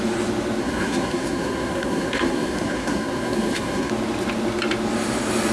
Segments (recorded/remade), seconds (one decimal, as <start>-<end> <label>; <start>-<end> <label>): 0.0-0.6 recorded; 0.6-3.9 remade; 3.9-5.5 recorded